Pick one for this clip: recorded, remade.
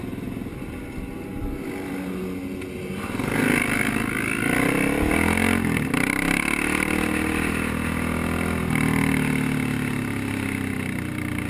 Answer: recorded